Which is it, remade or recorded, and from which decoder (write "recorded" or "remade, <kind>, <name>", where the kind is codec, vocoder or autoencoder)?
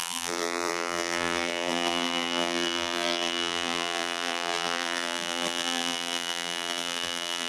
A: remade, vocoder, BigVGAN v2